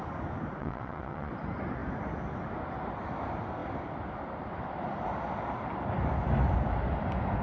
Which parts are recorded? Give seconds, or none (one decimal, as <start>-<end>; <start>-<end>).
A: 0.0-0.6; 1.3-7.4